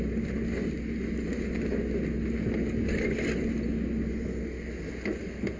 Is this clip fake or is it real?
real